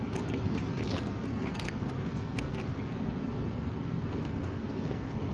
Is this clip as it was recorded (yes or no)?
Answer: no